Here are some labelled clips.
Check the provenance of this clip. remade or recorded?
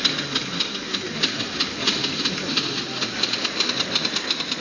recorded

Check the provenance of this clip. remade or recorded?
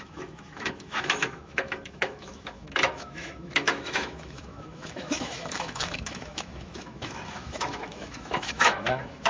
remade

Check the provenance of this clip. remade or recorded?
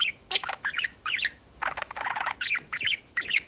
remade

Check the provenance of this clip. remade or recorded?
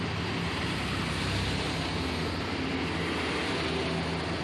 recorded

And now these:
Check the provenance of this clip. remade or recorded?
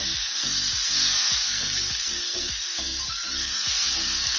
remade